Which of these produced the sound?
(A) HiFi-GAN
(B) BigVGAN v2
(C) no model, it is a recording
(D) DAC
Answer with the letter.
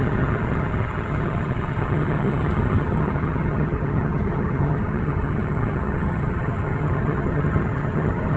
A